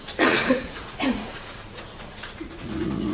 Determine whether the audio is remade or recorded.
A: remade